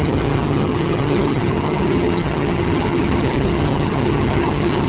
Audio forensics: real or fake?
fake